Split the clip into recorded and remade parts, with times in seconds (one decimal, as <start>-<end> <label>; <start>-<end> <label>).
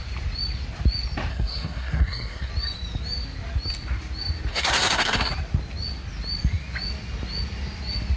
0.0-1.3 recorded; 1.3-2.5 remade; 2.5-4.5 recorded; 4.5-5.3 remade; 5.3-8.2 recorded